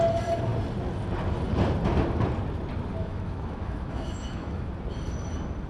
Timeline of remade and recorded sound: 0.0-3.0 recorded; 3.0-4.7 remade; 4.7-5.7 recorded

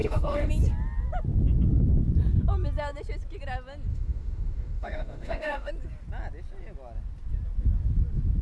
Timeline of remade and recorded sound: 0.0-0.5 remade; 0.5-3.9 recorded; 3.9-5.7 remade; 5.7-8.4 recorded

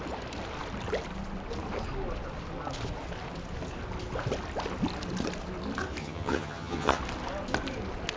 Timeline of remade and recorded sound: 0.0-6.0 recorded; 6.0-7.0 remade; 7.0-8.2 recorded

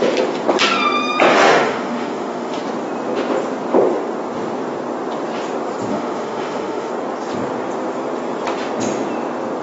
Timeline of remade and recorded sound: 0.0-1.3 recorded; 1.3-2.6 remade; 2.6-5.9 recorded; 5.9-6.9 remade; 6.9-9.6 recorded

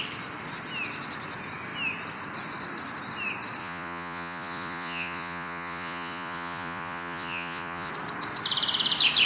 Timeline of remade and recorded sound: 0.0-3.6 recorded; 3.6-7.9 remade; 7.9-9.3 recorded

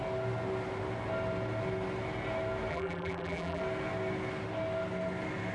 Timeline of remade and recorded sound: 0.0-2.7 recorded; 2.7-3.6 remade; 3.6-5.5 recorded

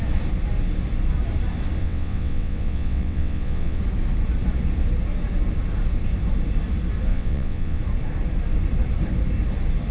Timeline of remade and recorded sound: 0.0-1.8 recorded; 1.8-3.8 remade; 3.8-7.1 recorded; 7.1-7.8 remade; 7.8-9.9 recorded